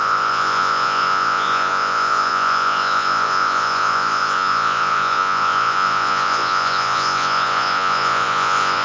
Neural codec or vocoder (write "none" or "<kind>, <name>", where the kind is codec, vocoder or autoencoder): vocoder, Vocos